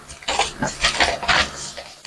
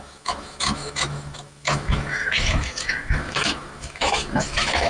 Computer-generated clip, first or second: second